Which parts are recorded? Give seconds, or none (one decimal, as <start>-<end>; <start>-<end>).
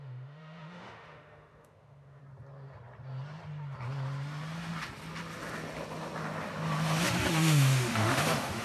2.2-7.3